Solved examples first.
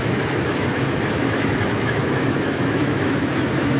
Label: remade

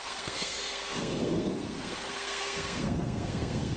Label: remade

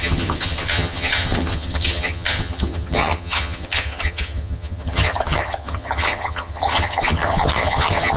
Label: remade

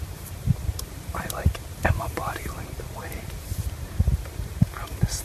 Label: remade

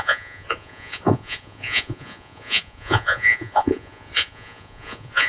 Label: remade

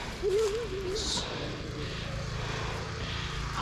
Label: recorded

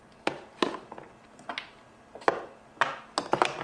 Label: recorded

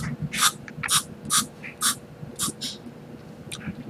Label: recorded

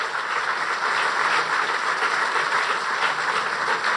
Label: recorded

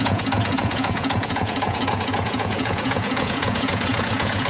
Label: remade